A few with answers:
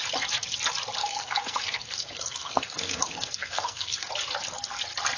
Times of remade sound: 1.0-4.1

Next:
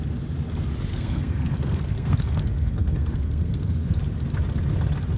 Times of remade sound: 0.9-4.0